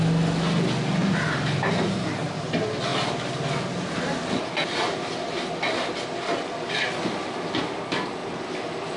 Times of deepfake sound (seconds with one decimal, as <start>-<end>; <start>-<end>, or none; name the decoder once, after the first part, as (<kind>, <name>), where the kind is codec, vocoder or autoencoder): 1.0-1.9 (vocoder, BigVGAN v2)

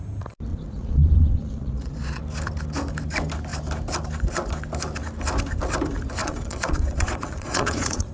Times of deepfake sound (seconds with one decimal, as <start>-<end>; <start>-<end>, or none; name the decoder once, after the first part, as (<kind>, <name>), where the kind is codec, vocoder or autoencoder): 0.5-2.2 (vocoder, Vocos); 6.2-8.1